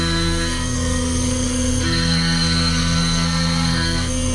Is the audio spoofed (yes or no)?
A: yes